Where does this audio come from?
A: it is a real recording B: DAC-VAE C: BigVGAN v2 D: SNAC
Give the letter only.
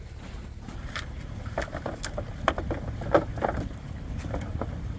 A